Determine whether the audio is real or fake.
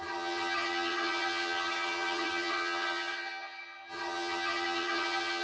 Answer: fake